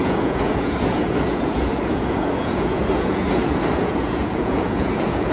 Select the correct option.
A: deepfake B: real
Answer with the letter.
A